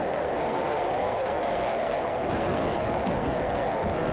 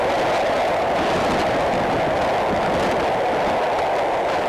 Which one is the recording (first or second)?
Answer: second